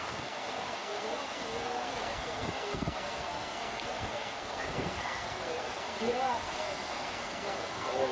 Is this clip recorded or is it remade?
remade